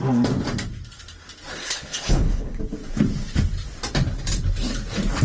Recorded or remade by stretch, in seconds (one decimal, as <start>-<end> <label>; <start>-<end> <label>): 0.0-1.6 recorded; 1.6-2.6 remade; 2.6-5.2 recorded